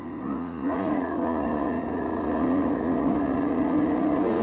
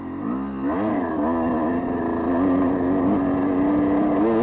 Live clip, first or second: second